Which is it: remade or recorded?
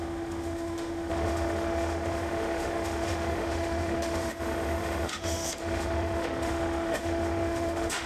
remade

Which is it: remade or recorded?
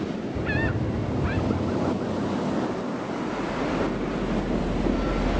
recorded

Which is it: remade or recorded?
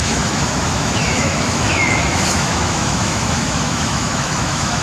remade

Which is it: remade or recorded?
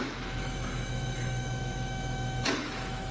remade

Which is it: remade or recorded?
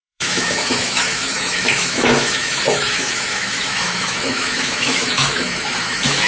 remade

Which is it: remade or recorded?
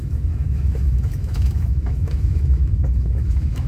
remade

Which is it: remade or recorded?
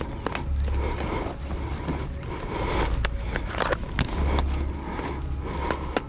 recorded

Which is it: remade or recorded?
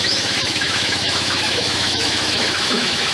remade